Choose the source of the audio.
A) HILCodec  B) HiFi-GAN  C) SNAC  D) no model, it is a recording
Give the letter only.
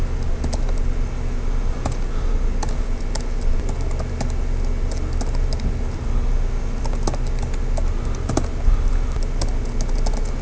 D